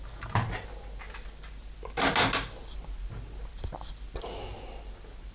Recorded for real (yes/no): yes